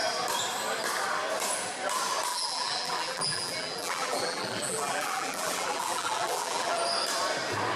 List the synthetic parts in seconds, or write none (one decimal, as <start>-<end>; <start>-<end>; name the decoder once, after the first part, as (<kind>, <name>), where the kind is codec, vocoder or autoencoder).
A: 2.3-6.8 (vocoder, BigVGAN v2)